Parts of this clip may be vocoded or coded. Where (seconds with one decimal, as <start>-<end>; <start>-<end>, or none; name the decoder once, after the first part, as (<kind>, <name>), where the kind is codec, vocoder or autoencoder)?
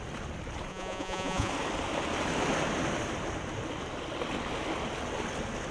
0.7-1.5 (vocoder, Vocos)